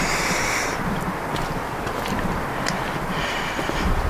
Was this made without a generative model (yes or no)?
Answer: yes